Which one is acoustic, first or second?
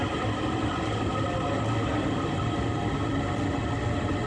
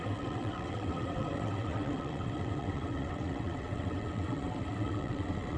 first